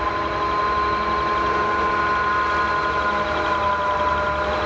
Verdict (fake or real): real